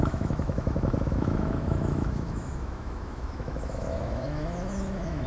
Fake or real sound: fake